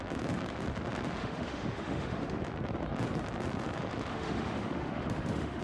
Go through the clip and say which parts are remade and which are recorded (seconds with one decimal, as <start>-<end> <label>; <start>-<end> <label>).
0.0-1.2 recorded; 1.2-2.4 remade; 2.4-4.1 recorded; 4.1-5.6 remade